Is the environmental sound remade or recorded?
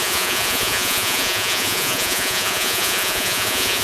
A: remade